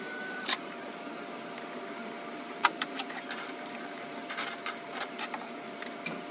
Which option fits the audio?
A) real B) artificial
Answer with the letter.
B